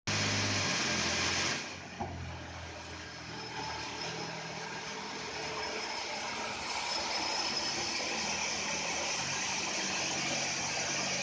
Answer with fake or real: real